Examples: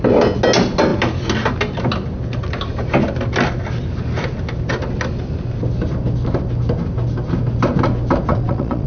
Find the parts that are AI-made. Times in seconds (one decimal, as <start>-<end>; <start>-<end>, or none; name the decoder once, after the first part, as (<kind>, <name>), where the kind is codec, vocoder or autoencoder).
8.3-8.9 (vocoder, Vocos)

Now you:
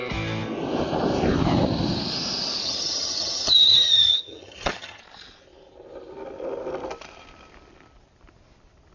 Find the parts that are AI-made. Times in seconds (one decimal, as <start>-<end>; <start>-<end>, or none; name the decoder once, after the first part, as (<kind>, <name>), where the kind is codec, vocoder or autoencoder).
2.6-5.0 (vocoder, HiFi-GAN)

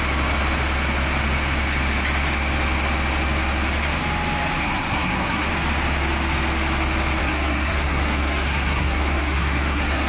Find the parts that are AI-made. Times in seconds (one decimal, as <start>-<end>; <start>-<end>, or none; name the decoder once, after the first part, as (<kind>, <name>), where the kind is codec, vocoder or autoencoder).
4.6-5.5 (codec, SNAC); 7.2-10.1

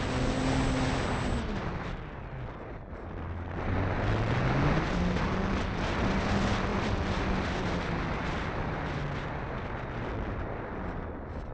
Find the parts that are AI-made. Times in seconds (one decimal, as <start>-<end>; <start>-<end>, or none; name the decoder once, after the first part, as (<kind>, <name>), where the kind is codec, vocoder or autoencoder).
none